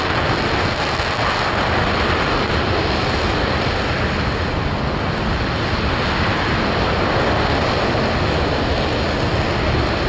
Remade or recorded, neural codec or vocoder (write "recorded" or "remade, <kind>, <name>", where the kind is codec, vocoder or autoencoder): recorded